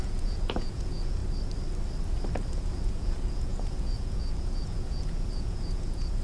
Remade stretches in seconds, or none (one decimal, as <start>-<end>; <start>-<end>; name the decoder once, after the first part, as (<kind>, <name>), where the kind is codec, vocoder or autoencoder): 0.0-1.2 (vocoder, Vocos); 2.6-6.2